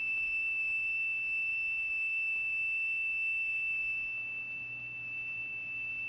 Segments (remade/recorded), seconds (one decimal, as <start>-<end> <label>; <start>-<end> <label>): 0.0-6.1 recorded